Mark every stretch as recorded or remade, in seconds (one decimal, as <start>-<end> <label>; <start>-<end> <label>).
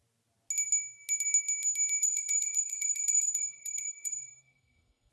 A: 0.0-2.0 recorded; 2.0-5.1 remade